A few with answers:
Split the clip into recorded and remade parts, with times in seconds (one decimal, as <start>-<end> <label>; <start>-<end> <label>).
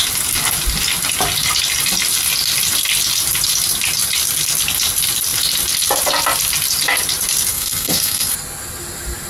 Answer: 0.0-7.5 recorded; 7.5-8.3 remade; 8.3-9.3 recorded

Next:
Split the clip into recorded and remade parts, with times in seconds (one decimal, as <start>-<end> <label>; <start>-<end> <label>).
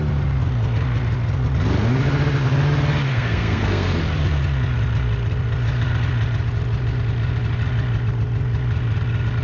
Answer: 0.0-3.1 recorded; 3.1-4.0 remade; 4.0-9.4 recorded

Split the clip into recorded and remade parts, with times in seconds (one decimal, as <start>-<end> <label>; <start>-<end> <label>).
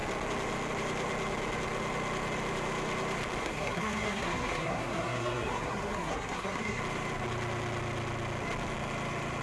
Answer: 0.0-3.4 recorded; 3.4-6.8 remade; 6.8-9.4 recorded